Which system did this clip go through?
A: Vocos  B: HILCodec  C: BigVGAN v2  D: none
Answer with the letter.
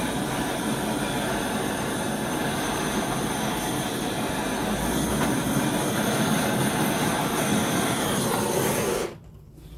D